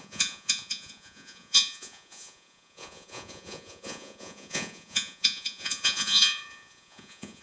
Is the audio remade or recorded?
remade